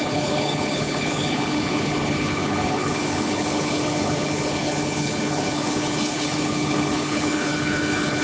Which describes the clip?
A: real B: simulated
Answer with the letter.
B